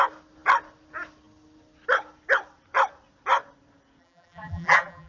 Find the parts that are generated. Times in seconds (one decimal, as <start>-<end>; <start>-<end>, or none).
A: 4.0-5.1